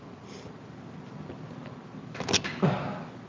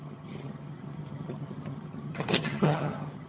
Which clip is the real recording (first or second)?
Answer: first